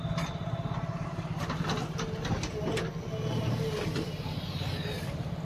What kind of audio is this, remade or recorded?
recorded